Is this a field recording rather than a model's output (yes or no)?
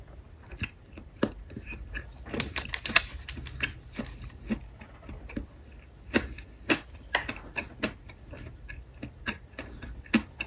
yes